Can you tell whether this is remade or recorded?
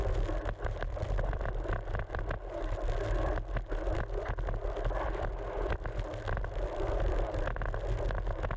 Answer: recorded